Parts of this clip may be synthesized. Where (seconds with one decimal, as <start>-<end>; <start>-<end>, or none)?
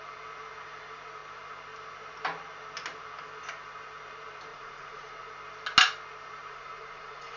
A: 4.5-5.3; 6.5-7.4